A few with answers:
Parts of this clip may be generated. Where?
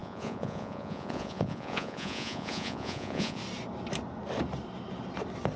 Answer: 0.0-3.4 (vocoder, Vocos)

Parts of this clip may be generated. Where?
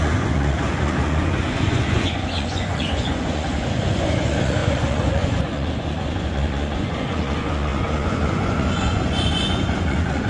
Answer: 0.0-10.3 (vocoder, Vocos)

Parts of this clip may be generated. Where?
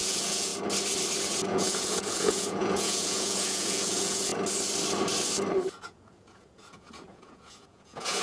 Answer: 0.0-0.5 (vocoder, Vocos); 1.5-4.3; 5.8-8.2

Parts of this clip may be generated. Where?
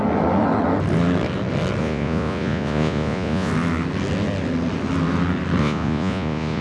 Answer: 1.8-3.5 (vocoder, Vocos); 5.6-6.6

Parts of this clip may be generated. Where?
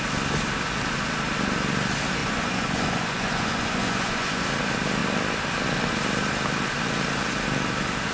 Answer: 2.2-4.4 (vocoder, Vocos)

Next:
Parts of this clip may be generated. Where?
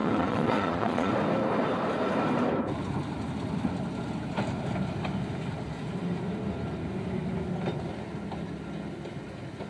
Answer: 0.0-1.1 (vocoder, Vocos)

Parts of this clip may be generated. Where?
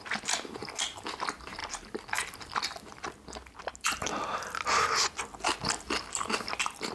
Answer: none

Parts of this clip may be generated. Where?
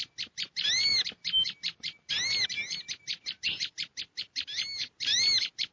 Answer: none